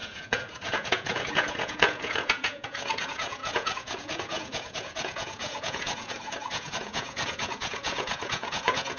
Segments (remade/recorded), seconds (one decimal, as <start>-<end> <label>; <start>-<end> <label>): 0.0-9.0 remade